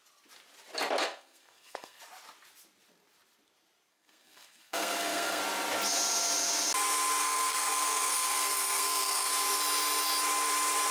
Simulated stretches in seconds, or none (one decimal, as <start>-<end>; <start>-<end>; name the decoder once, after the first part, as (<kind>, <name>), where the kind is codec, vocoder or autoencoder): 1.0-2.0 (codec, SNAC); 3.9-5.4; 7.2-9.3